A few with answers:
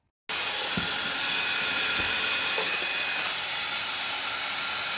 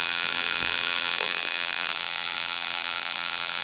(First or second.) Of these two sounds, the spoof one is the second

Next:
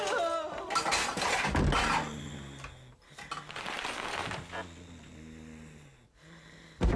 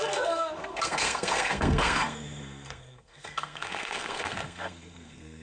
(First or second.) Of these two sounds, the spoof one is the second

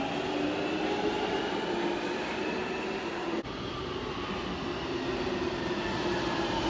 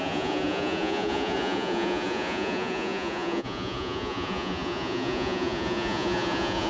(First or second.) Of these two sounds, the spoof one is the second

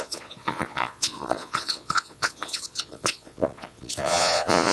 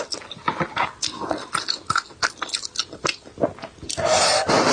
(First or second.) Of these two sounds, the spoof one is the first